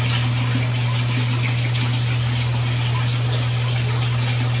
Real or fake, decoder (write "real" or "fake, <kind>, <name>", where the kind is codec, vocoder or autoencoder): real